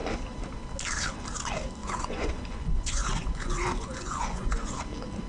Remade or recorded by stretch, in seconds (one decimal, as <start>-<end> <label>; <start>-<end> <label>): 0.0-1.8 recorded; 1.8-4.7 remade; 4.7-5.3 recorded